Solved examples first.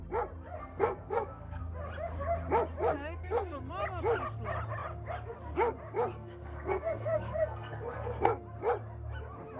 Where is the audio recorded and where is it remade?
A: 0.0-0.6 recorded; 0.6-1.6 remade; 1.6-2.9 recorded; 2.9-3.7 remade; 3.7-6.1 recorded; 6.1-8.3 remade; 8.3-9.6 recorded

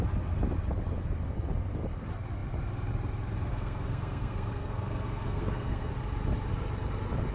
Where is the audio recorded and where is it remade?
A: 0.0-3.5 recorded; 3.5-5.9 remade; 5.9-7.3 recorded